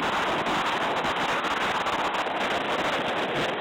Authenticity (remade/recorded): recorded